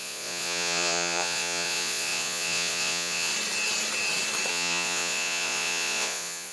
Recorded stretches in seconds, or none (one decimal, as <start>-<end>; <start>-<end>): 3.3-4.5